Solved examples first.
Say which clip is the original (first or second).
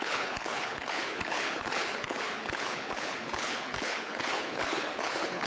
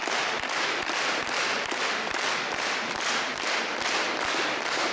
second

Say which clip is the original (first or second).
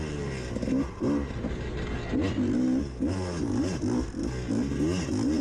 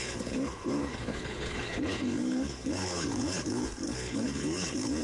first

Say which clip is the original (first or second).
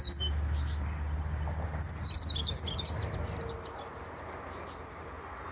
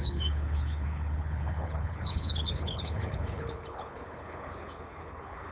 first